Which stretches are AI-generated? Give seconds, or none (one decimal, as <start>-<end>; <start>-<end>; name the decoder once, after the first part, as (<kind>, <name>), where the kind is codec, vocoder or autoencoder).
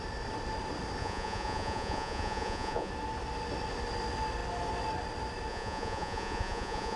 1.0-2.9 (vocoder, Vocos); 5.5-7.0